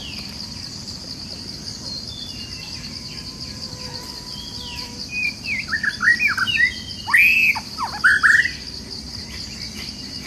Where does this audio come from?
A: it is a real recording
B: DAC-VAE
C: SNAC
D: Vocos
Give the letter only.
A